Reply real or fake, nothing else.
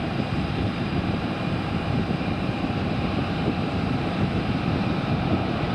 fake